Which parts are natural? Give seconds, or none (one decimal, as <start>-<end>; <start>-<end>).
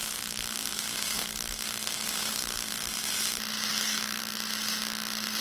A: 2.8-3.7; 4.2-5.4